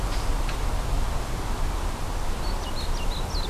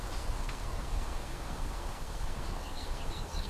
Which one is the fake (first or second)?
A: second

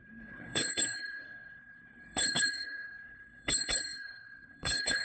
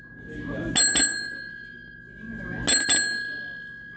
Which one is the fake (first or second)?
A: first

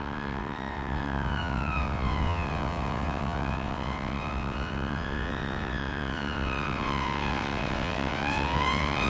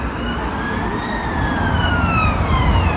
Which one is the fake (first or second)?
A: first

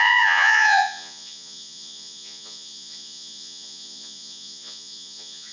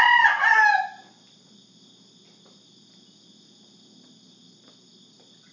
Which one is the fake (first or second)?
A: first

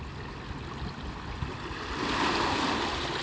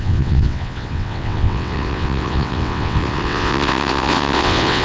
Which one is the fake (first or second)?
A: second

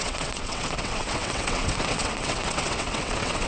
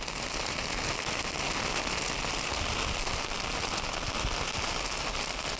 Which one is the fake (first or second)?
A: first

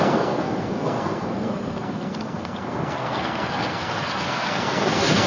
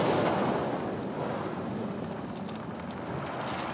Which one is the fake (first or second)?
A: first